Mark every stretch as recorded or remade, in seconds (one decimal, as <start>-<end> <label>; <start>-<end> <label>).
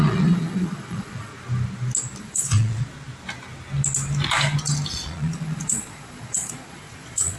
0.0-1.3 remade; 1.3-2.2 recorded; 2.2-2.8 remade; 2.8-4.9 recorded; 4.9-7.4 remade